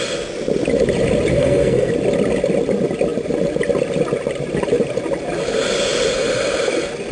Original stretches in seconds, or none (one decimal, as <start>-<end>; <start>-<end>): 0.0-1.3; 1.9-7.1